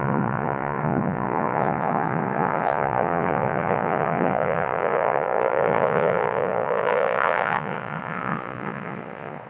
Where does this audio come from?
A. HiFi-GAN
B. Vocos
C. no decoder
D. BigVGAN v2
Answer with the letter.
B